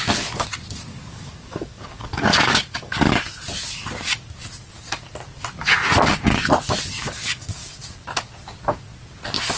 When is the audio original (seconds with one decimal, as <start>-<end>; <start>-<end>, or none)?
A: 0.0-0.9; 3.1-7.0; 7.7-9.6

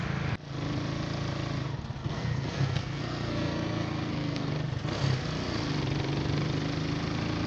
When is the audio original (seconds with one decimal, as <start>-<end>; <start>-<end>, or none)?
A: 0.0-2.0; 4.5-7.5

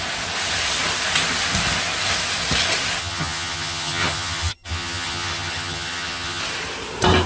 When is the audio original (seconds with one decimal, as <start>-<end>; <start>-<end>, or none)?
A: 0.0-3.0; 6.4-7.3

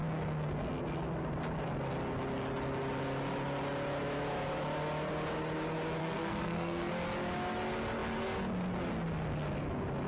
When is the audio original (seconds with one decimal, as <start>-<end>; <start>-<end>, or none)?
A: 0.0-6.0; 6.9-10.1

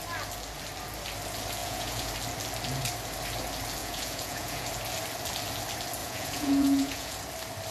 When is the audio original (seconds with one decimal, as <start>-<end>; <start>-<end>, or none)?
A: 0.0-1.6; 2.1-3.8; 4.7-6.0; 7.2-7.7

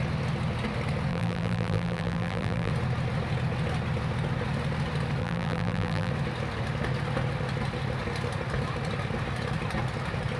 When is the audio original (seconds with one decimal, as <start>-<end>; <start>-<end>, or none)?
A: 0.0-1.1; 2.7-5.2; 6.1-10.4

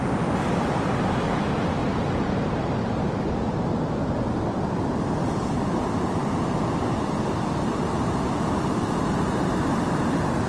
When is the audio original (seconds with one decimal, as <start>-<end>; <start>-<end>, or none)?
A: 0.0-1.8; 3.3-6.2; 6.8-10.5

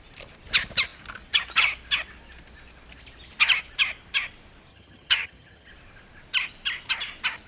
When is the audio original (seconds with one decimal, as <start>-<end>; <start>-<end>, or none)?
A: 0.0-4.7; 5.7-7.5